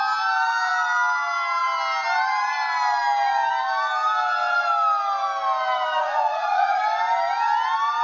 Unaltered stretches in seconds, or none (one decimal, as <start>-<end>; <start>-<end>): 0.0-6.0; 6.8-8.0